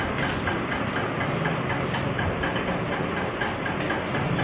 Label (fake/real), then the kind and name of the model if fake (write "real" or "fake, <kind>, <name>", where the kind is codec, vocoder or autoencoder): real